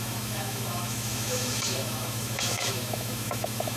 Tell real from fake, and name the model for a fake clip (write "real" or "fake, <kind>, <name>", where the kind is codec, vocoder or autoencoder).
fake, autoencoder, DAC-VAE